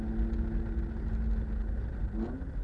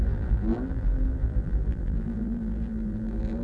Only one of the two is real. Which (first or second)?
first